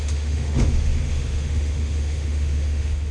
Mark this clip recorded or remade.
remade